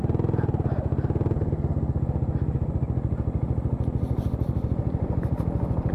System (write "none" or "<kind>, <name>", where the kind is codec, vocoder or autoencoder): none